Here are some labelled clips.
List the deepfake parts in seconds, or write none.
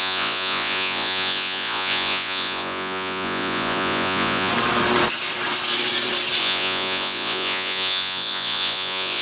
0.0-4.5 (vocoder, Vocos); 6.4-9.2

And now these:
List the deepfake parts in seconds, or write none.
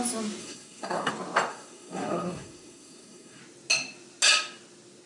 0.4-1.1 (codec, SNAC); 1.5-3.4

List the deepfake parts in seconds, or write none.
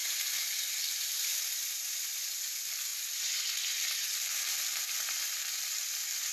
0.8-2.9 (vocoder, BigVGAN v2); 5.0-6.3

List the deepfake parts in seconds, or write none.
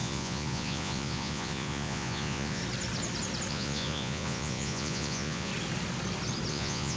0.0-2.6 (vocoder, Vocos); 3.5-5.5; 6.5-7.0